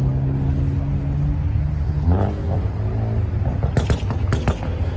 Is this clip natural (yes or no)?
yes